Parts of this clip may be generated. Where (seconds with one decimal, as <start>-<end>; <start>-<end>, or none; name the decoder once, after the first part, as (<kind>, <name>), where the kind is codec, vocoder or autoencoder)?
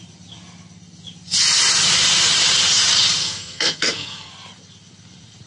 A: 3.2-4.3 (codec, SNAC)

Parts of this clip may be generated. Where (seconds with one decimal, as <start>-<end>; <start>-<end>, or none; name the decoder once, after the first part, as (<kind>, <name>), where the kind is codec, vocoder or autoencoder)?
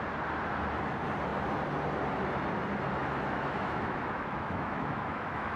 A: 3.0-5.6 (autoencoder, DAC-VAE)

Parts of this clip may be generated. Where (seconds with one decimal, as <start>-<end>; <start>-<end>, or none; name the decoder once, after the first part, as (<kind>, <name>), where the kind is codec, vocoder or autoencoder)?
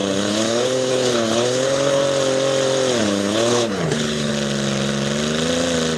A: 0.0-2.0 (codec, HILCodec); 3.0-4.3